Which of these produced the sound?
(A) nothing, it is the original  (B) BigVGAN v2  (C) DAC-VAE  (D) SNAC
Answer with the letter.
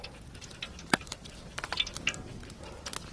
A